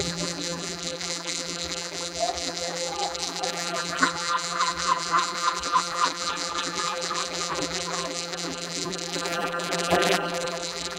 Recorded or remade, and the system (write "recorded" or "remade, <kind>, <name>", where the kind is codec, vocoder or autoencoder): remade, vocoder, BigVGAN v2